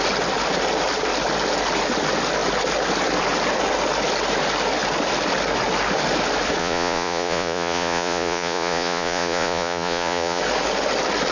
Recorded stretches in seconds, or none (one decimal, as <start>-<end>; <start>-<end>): 0.0-6.6; 10.4-11.3